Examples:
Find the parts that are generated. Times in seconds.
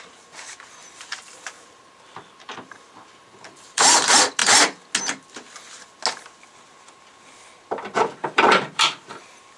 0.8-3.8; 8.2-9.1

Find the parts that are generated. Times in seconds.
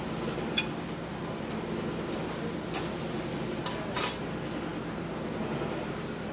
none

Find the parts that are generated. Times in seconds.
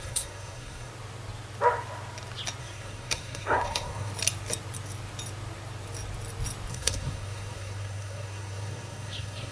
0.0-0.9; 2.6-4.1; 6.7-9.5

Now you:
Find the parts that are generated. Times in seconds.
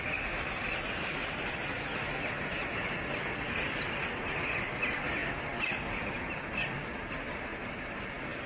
none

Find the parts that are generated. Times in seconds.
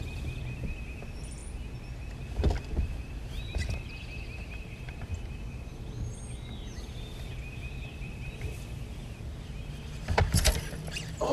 0.0-1.4; 3.3-5.1; 7.2-11.3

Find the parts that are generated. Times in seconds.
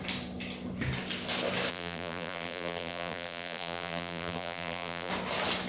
1.7-5.1